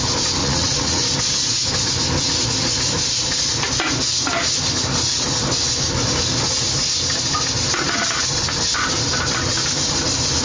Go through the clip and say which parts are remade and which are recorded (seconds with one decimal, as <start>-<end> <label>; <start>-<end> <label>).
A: 0.0-0.4 recorded; 0.4-1.0 remade; 1.0-10.4 recorded